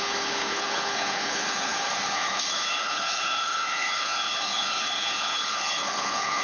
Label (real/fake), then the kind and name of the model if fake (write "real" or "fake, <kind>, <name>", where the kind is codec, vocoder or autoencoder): fake, codec, HILCodec